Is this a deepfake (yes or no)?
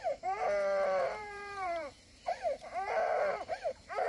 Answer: yes